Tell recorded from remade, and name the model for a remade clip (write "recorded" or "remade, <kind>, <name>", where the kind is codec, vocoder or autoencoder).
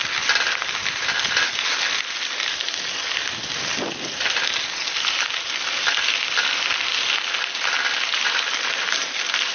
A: recorded